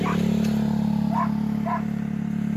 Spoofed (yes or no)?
no